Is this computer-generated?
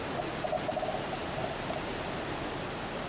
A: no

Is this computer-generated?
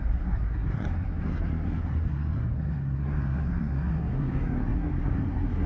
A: yes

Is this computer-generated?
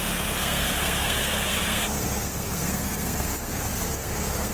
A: yes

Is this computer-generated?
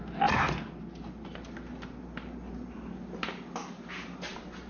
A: no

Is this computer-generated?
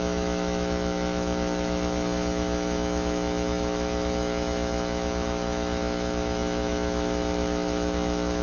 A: yes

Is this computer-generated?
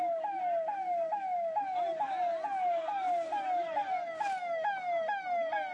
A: no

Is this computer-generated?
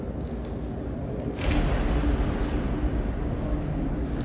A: no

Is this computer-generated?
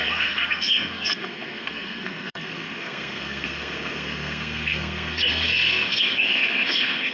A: yes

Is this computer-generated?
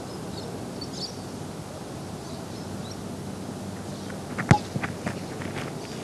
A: no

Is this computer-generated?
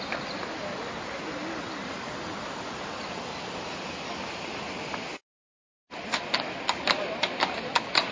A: no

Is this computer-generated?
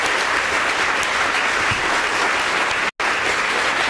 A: no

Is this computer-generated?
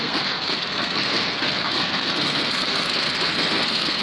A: yes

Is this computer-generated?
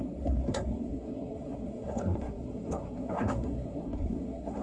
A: yes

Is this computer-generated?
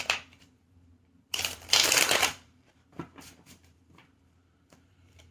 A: yes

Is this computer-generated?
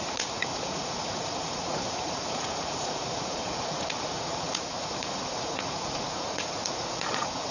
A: yes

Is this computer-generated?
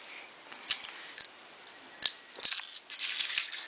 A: no